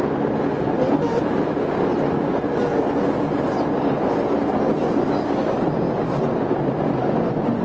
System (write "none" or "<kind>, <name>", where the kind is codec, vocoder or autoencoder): none